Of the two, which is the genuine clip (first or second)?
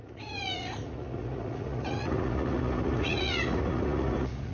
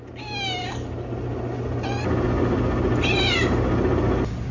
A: second